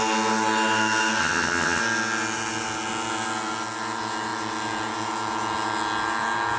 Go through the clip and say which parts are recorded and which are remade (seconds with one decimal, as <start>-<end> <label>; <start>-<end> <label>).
0.0-1.2 recorded; 1.2-1.8 remade; 1.8-6.6 recorded